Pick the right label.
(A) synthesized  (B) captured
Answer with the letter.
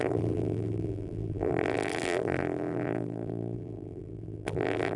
A